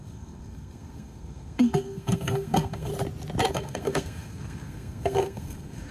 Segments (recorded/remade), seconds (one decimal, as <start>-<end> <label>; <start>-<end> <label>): 0.0-2.9 remade; 2.9-3.5 recorded; 3.5-5.9 remade